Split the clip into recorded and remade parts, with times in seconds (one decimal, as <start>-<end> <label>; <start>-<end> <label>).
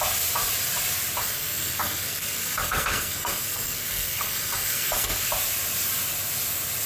0.0-1.2 recorded; 1.2-5.3 remade; 5.3-6.9 recorded